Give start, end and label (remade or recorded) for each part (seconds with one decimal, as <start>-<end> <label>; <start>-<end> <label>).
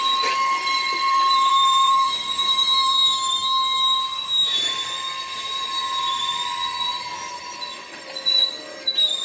0.0-3.0 remade; 3.0-6.2 recorded; 6.2-9.2 remade